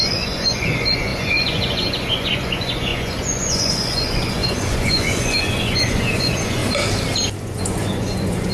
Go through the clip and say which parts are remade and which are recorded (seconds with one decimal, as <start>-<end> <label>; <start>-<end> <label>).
0.0-6.6 remade; 6.6-7.4 recorded; 7.4-8.5 remade